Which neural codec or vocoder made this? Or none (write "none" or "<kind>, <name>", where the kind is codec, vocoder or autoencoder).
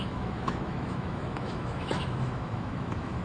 autoencoder, DAC-VAE